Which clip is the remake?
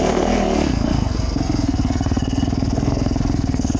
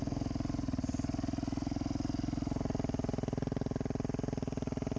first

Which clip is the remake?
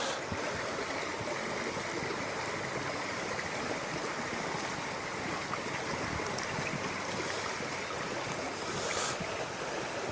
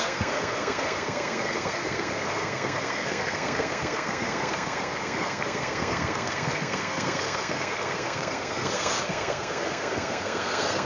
second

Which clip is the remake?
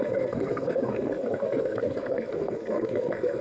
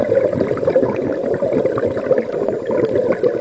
first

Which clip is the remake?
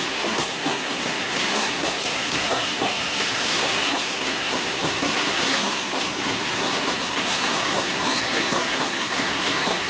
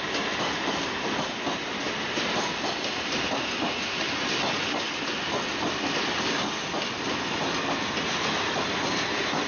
first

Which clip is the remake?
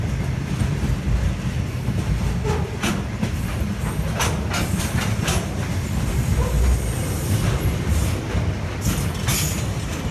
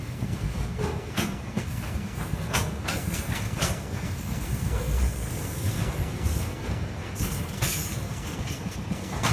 second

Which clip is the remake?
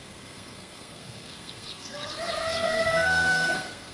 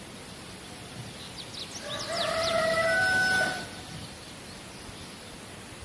first